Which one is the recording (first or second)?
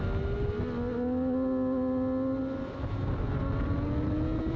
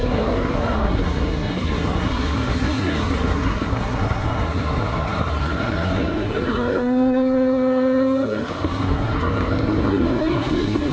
first